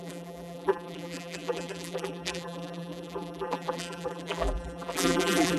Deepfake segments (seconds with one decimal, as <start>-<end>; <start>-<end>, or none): 0.0-5.6